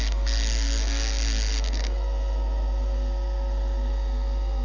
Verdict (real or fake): fake